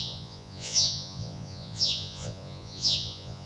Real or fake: fake